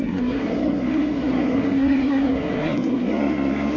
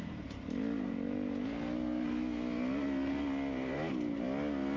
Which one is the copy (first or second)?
first